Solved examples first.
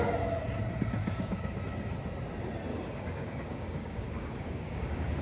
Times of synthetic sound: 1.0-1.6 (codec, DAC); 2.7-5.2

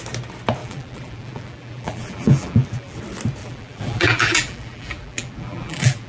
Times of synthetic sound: 0.6-3.0 (vocoder, BigVGAN v2); 3.4-6.1

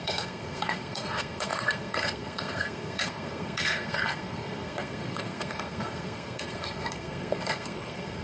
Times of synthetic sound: 0.0-8.2 (codec, SNAC)